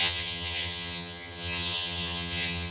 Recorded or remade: remade